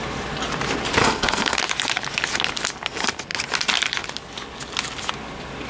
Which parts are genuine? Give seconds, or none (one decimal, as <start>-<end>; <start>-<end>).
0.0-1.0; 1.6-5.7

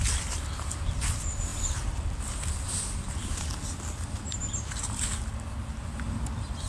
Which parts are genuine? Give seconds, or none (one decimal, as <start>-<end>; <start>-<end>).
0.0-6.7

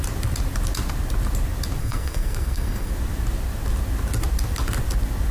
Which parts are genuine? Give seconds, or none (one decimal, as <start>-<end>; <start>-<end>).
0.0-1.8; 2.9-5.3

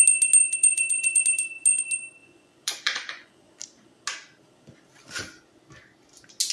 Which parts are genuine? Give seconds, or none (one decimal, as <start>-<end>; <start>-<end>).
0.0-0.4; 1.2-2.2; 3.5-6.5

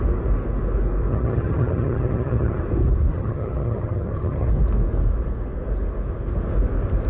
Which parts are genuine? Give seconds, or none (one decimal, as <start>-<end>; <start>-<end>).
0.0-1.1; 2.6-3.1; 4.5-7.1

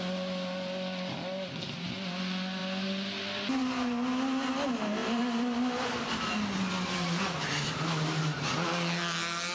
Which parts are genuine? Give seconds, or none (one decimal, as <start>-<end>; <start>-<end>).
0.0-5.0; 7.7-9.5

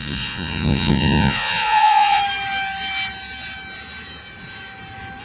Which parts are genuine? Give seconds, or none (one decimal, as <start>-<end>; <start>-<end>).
2.2-5.2